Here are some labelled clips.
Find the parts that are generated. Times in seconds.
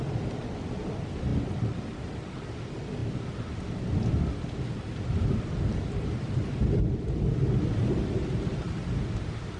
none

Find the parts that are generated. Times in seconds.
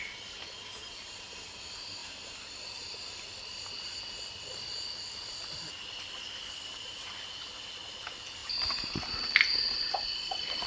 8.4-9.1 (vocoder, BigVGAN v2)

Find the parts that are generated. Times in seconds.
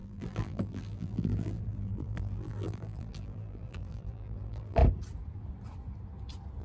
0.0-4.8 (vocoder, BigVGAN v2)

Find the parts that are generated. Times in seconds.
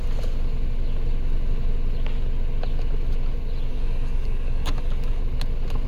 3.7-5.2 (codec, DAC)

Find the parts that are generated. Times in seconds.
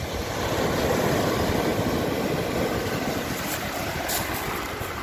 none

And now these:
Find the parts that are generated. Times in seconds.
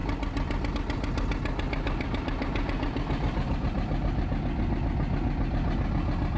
none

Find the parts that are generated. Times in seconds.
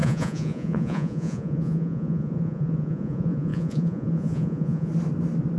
0.0-4.9 (vocoder, Vocos)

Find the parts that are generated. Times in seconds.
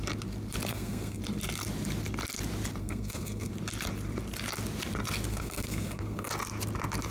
0.7-1.2 (codec, SNAC); 2.8-3.5; 5.3-6.3